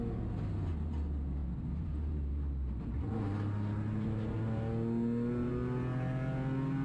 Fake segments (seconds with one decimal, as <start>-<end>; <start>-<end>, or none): none